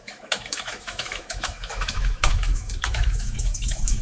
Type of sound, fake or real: fake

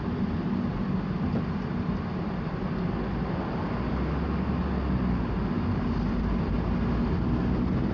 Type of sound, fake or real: real